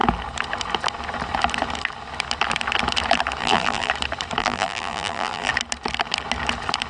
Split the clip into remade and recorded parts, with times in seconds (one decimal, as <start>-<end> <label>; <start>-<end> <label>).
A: 0.0-3.4 recorded; 3.4-3.9 remade; 3.9-4.4 recorded; 4.4-5.5 remade; 5.5-6.9 recorded